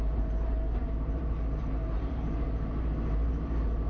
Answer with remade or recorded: remade